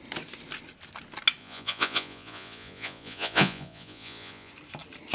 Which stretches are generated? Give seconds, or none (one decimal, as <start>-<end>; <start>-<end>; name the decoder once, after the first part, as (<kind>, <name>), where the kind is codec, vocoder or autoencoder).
1.4-4.5 (vocoder, Vocos)